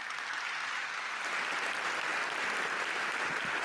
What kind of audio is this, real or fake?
real